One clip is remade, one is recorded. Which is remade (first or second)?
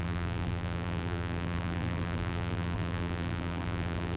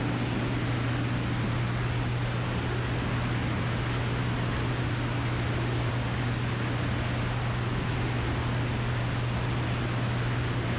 first